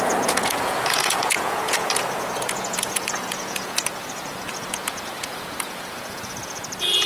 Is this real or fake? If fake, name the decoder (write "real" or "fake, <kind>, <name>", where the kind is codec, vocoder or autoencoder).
fake, vocoder, Vocos